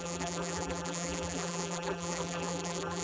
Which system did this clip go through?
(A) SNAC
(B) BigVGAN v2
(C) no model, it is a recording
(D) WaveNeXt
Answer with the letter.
B